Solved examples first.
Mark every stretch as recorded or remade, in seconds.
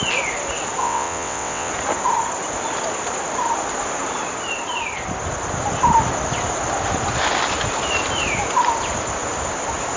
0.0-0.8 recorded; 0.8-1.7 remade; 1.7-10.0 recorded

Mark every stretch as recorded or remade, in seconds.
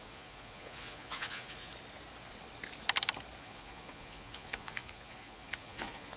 0.0-1.7 remade; 1.7-3.4 recorded; 3.4-6.2 remade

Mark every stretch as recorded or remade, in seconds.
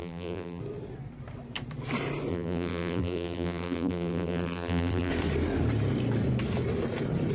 0.0-0.6 remade; 0.6-2.3 recorded; 2.3-5.1 remade; 5.1-7.3 recorded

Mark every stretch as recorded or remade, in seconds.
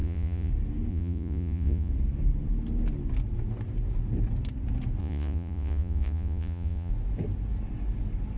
0.0-0.5 remade; 0.5-0.9 recorded; 0.9-1.9 remade; 1.9-5.0 recorded; 5.0-6.9 remade; 6.9-8.4 recorded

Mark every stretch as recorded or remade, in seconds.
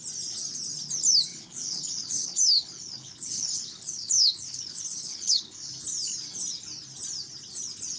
0.0-1.3 recorded; 1.3-5.7 remade; 5.7-8.0 recorded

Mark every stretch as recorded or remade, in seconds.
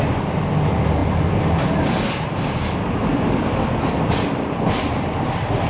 0.0-5.7 recorded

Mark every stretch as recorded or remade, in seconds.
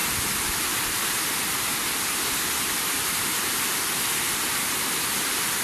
0.0-5.6 recorded